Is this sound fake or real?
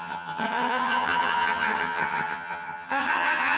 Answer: fake